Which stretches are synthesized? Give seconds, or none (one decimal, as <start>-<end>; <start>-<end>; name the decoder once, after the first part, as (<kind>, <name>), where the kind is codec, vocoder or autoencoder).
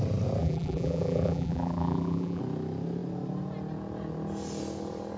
0.4-2.4 (vocoder, BigVGAN v2)